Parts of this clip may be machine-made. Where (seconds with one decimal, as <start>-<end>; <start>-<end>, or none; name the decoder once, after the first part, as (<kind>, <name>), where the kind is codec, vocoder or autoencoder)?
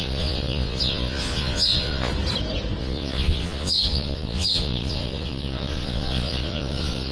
0.0-2.1 (vocoder, Vocos); 2.8-7.1